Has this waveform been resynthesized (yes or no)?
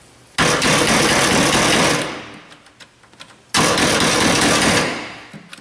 no